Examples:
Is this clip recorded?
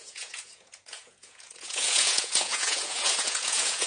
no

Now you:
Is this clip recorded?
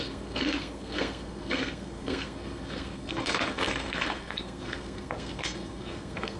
no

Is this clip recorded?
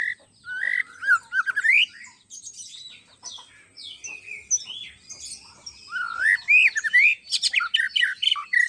yes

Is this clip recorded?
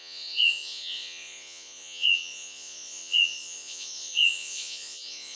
no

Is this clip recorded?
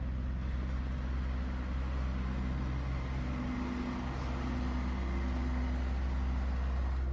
yes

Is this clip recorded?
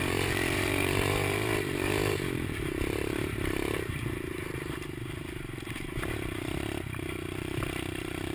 no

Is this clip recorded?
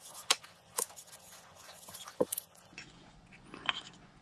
no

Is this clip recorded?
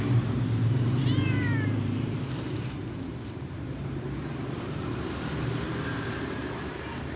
no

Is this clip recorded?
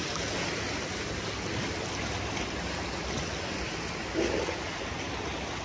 yes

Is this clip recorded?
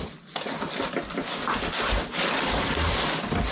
no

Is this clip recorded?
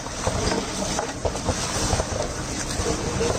yes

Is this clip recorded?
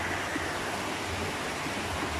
yes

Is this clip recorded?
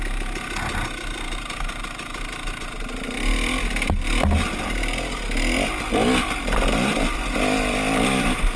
yes